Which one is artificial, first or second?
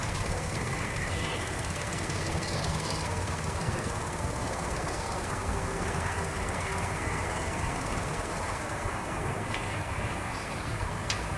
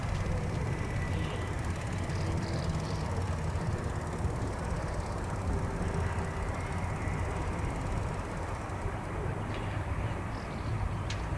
first